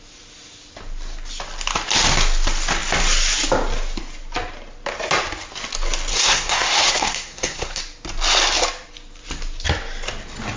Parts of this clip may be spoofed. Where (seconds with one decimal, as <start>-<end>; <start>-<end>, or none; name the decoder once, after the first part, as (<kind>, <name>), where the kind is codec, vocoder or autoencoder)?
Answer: 6.1-7.8 (codec, SNAC)